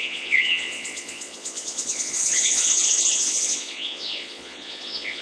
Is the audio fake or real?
fake